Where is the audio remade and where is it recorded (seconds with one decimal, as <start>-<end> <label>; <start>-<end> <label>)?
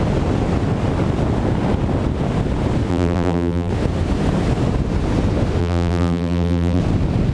0.0-2.9 recorded; 2.9-3.7 remade; 3.7-5.6 recorded; 5.6-6.8 remade; 6.8-7.3 recorded